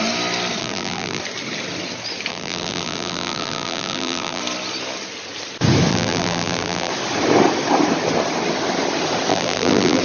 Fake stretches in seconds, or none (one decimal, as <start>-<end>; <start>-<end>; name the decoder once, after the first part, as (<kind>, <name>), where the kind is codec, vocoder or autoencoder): 0.6-1.2 (vocoder, BigVGAN v2); 2.3-4.4; 5.9-6.9; 9.3-10.0